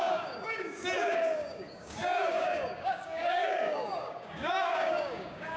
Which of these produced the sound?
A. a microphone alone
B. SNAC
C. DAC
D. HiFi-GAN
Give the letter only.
C